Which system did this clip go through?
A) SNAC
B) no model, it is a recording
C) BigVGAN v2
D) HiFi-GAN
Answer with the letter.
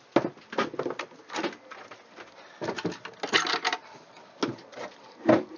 B